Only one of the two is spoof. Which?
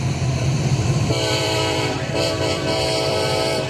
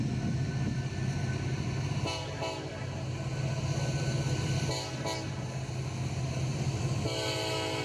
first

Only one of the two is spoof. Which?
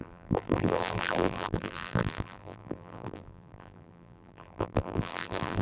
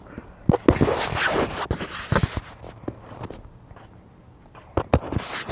first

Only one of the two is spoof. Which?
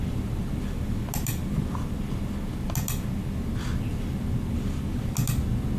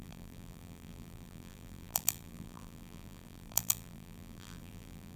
second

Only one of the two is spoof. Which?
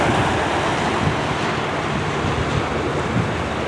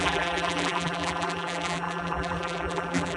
second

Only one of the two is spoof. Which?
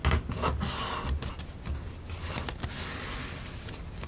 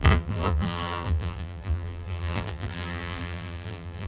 second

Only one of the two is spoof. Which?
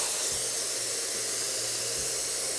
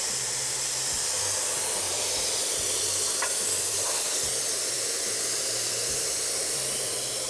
second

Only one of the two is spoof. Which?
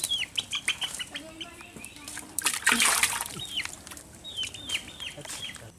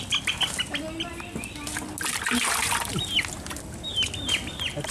first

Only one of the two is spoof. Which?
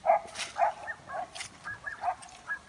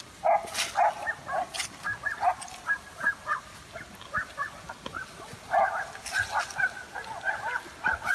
first